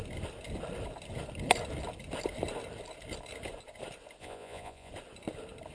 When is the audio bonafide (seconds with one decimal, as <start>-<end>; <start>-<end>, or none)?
0.0-4.2; 4.9-5.7